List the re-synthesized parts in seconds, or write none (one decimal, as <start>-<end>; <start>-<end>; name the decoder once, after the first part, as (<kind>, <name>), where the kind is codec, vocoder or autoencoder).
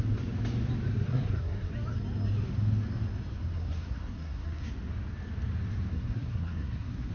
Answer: 0.9-1.7 (codec, SNAC); 3.5-4.7; 5.9-7.1